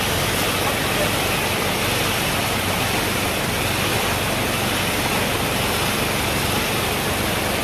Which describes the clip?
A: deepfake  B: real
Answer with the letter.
B